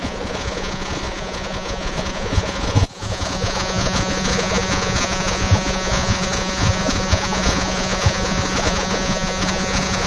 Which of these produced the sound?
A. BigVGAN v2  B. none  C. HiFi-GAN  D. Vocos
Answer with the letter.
D